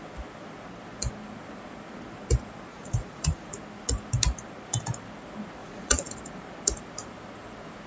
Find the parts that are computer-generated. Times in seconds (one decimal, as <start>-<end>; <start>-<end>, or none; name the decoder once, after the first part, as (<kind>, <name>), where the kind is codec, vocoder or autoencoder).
2.7-3.5 (vocoder, Vocos); 5.6-6.1